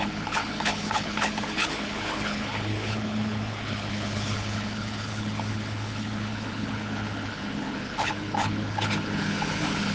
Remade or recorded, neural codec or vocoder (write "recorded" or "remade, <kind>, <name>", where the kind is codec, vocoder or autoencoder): remade, codec, HILCodec